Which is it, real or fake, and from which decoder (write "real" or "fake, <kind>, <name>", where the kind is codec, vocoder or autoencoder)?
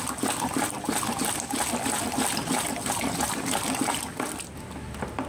real